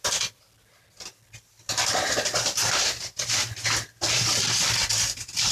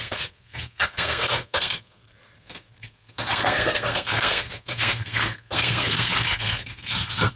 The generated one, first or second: second